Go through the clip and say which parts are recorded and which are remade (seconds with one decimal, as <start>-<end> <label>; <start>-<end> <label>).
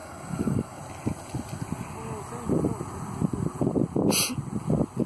0.0-0.8 remade; 0.8-5.1 recorded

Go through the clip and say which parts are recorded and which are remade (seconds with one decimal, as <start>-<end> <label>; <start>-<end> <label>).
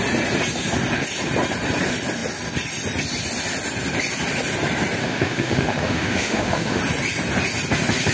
0.0-5.0 recorded; 5.0-6.8 remade; 6.8-8.1 recorded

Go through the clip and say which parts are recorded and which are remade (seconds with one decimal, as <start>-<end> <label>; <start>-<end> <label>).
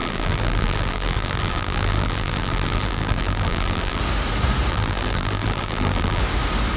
0.0-4.0 remade; 4.0-4.7 recorded; 4.7-6.2 remade; 6.2-6.8 recorded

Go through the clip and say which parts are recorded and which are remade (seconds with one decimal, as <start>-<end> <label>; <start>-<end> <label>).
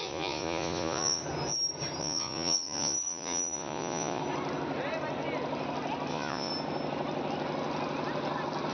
0.0-1.2 remade; 1.2-2.0 recorded; 2.0-4.2 remade; 4.2-6.1 recorded; 6.1-6.5 remade; 6.5-8.7 recorded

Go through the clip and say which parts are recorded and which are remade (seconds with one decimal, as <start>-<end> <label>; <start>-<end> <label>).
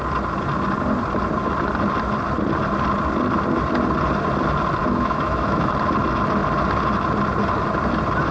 0.0-4.8 recorded; 4.8-5.7 remade; 5.7-8.3 recorded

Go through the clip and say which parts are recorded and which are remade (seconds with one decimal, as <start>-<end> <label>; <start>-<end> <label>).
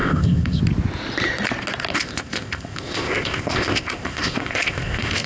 0.0-0.6 remade; 0.6-1.9 recorded; 1.9-5.3 remade